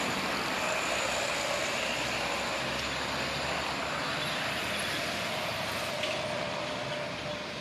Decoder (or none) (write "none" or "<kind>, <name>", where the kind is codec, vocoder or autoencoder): none